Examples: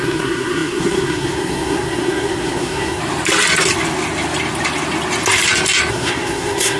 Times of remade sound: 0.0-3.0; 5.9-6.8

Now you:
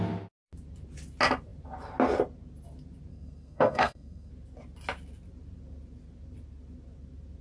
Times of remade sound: 3.1-4.3

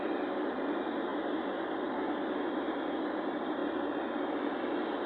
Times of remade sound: none

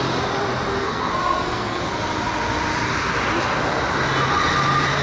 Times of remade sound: 0.8-1.8

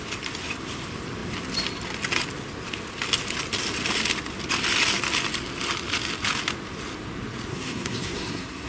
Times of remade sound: 7.5-8.7